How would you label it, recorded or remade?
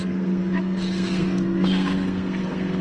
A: remade